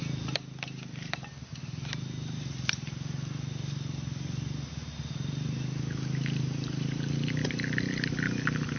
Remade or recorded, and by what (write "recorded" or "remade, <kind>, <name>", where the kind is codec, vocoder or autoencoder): recorded